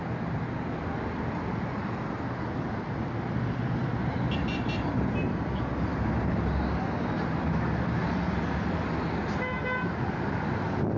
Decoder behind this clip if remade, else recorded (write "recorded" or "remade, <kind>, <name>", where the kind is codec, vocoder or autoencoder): recorded